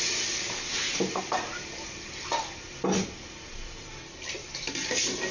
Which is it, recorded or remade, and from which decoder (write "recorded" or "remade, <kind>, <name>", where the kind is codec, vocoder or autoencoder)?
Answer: recorded